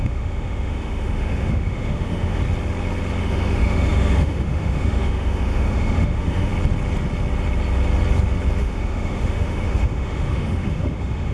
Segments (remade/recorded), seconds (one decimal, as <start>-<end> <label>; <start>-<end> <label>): 0.0-2.4 remade; 2.4-3.2 recorded; 3.2-6.5 remade; 6.5-8.6 recorded; 8.6-11.3 remade